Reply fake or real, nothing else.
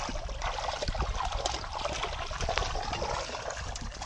real